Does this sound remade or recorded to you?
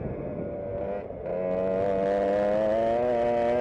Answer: recorded